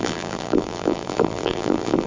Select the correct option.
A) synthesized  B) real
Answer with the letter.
A